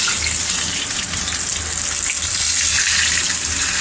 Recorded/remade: recorded